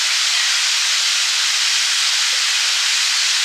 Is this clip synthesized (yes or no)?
no